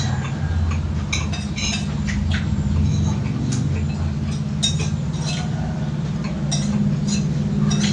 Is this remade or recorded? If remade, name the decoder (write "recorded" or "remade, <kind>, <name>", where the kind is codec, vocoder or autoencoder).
recorded